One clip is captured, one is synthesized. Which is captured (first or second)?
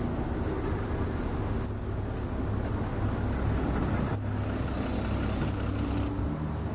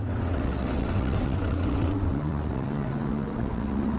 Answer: first